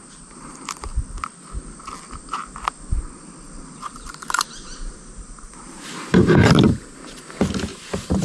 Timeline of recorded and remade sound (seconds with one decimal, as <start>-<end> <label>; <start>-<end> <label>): 0.0-0.9 remade; 0.9-3.6 recorded; 3.6-8.2 remade